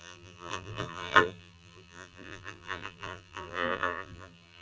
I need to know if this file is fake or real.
fake